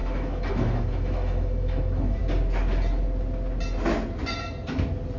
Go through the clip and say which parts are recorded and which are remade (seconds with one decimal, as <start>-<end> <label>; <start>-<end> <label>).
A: 0.0-2.2 remade; 2.2-5.2 recorded